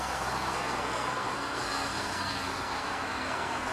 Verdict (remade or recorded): remade